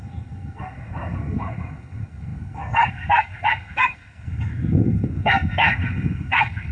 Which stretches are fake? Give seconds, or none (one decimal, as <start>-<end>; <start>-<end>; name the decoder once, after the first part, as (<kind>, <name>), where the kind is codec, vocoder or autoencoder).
0.0-6.7 (codec, SNAC)